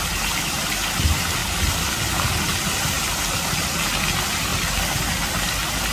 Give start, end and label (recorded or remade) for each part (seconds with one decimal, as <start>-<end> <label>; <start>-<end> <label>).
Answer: 0.0-5.9 recorded